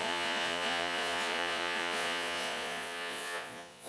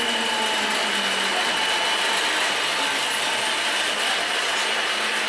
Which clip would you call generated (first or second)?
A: first